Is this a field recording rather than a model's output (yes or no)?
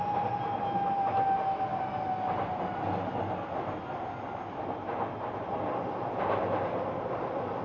yes